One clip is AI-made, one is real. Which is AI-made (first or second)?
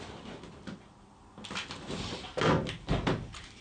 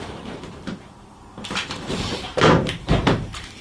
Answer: second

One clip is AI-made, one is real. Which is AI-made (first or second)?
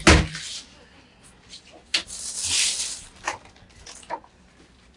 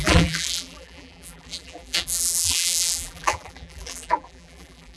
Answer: second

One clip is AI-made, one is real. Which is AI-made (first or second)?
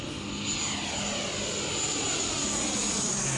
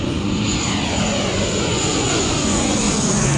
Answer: second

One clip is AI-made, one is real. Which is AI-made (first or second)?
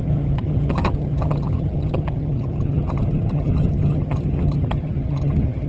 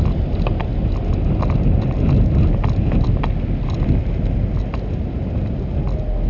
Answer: first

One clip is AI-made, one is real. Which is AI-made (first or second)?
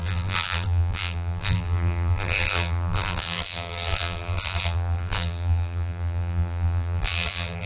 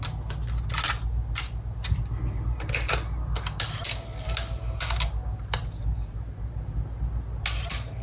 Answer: first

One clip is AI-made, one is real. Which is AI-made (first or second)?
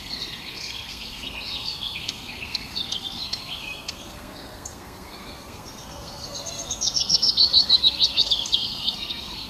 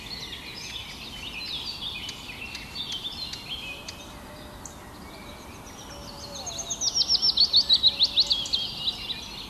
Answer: first